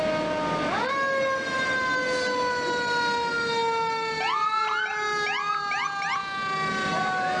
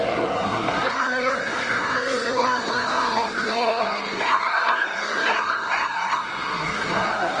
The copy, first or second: second